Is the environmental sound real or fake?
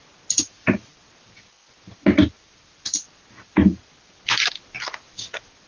real